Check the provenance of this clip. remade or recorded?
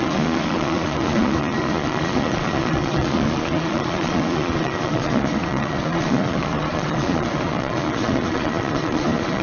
remade